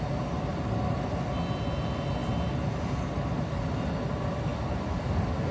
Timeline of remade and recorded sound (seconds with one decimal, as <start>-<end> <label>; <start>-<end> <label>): 0.0-5.5 recorded